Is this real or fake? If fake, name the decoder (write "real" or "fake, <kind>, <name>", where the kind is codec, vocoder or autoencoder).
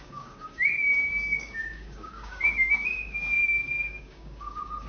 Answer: fake, codec, DAC